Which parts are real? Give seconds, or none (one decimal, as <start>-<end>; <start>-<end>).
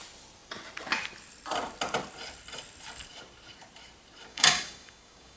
0.0-4.3